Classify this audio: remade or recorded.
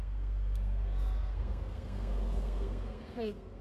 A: remade